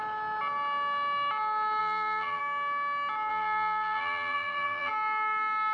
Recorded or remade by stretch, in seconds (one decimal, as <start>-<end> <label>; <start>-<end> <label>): 0.0-1.8 recorded; 1.8-2.4 remade; 2.4-3.3 recorded; 3.3-4.9 remade; 4.9-5.7 recorded